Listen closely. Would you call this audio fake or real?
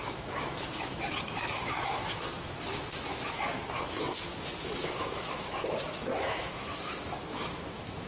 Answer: fake